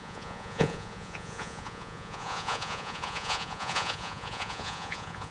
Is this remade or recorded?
remade